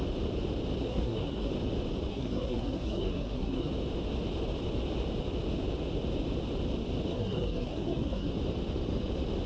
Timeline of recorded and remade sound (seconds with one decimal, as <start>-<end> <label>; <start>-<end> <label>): 0.0-0.8 recorded; 0.8-1.5 remade; 1.5-2.1 recorded; 2.1-3.7 remade; 3.7-7.1 recorded; 7.1-8.3 remade; 8.3-9.5 recorded